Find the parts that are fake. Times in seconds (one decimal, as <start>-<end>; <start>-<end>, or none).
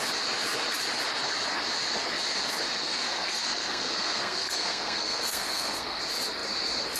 2.8-6.0